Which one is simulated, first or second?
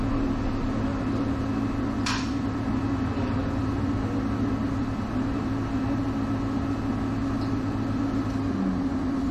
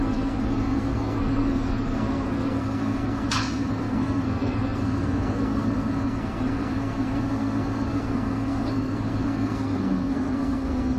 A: second